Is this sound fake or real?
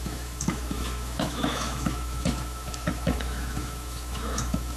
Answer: fake